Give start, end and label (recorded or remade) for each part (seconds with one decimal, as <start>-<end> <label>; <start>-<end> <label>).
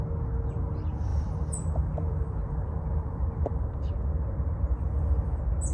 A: 0.0-1.1 recorded; 1.1-3.9 remade; 3.9-5.7 recorded